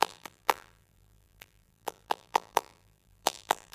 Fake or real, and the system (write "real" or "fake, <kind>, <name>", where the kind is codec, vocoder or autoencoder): fake, vocoder, BigVGAN v2